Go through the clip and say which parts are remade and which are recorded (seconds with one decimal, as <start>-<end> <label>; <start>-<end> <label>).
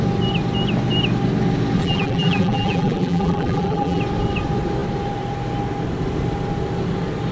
0.0-1.8 recorded; 1.8-4.0 remade; 4.0-7.3 recorded